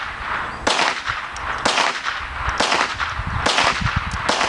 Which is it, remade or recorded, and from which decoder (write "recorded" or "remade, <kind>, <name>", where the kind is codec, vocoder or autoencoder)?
recorded